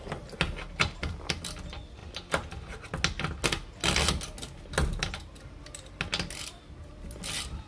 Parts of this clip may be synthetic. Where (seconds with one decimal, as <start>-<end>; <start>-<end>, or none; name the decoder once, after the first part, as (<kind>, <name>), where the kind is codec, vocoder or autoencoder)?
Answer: none